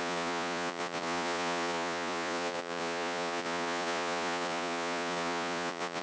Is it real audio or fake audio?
fake